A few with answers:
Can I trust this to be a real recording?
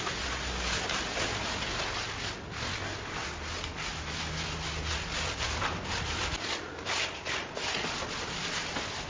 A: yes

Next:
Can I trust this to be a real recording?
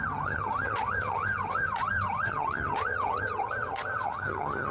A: no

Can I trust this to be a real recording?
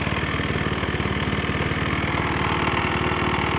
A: yes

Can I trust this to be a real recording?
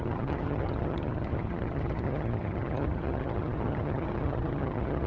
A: no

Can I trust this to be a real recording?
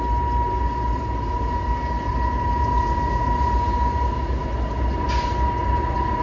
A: yes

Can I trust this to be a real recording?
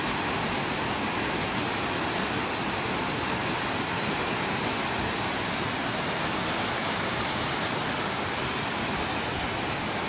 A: yes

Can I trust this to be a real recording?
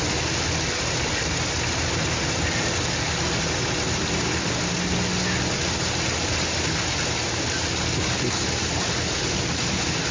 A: yes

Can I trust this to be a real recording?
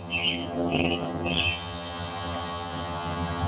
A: no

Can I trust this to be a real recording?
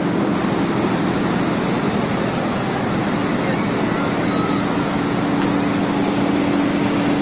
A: yes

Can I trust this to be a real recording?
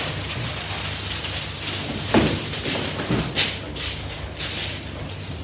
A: yes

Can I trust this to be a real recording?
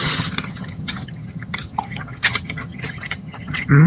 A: no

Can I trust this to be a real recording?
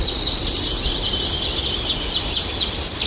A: yes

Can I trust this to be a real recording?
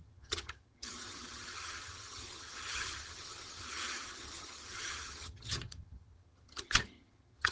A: no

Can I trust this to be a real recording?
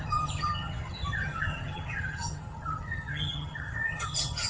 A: no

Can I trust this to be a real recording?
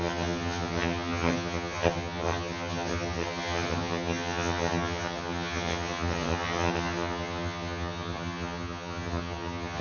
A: no